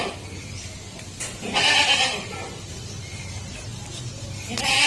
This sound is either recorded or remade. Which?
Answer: recorded